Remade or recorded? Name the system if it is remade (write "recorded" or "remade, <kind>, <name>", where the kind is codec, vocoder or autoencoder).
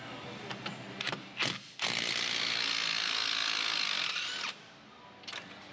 recorded